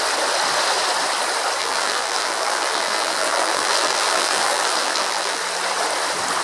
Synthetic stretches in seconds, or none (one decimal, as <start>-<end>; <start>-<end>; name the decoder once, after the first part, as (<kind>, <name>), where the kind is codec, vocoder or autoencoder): 1.6-5.4 (vocoder, BigVGAN v2)